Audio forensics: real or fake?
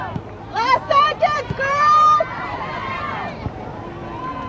fake